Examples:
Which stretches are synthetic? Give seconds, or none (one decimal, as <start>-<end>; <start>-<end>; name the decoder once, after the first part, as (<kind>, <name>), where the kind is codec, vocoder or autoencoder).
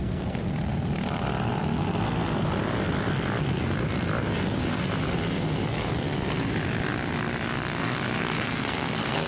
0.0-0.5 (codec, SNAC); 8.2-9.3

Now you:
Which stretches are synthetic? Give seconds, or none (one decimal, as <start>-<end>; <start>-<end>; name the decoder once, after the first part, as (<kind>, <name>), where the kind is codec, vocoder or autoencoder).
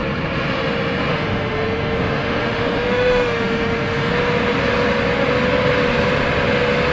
1.1-4.1 (autoencoder, DAC-VAE)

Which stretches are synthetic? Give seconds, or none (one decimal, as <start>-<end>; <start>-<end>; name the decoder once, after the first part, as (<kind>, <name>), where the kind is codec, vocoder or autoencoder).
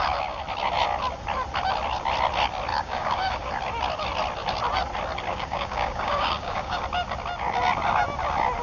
2.7-3.5 (codec, DAC); 5.3-6.8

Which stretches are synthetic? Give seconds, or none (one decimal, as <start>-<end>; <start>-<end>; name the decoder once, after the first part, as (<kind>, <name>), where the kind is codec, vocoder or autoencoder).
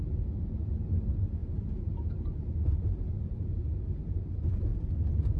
1.4-3.6 (vocoder, BigVGAN v2)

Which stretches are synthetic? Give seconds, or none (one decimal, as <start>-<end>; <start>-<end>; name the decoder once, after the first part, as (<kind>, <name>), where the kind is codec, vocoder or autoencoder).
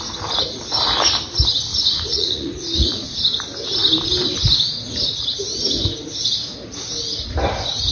1.7-3.2 (vocoder, Vocos)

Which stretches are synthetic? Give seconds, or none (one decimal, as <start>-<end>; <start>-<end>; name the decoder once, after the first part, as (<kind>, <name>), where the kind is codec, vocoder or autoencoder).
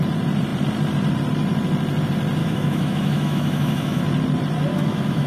2.4-4.0 (autoencoder, DAC-VAE); 4.7-5.3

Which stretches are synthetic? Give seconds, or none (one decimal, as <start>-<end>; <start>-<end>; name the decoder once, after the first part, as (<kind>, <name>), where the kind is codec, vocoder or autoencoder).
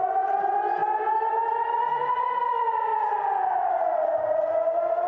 none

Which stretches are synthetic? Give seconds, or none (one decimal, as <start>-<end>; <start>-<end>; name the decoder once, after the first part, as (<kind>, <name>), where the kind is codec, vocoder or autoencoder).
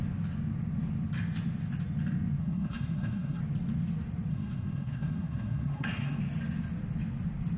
2.4-3.4 (codec, SNAC); 4.3-6.2